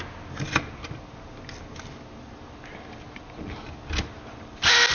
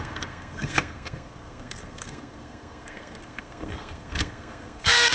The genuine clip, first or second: first